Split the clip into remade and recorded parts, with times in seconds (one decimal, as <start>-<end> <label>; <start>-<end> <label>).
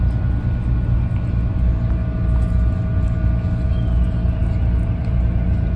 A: 0.0-5.8 recorded